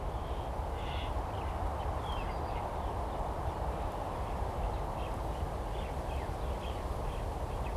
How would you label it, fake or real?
real